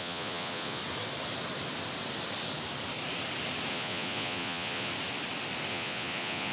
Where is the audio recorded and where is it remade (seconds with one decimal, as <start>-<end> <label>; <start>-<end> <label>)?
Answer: 0.0-0.8 remade; 0.8-3.7 recorded; 3.7-4.9 remade; 4.9-5.7 recorded; 5.7-6.5 remade